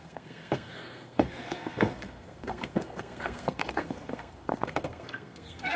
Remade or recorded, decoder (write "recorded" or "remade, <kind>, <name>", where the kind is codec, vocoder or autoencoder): remade, codec, SNAC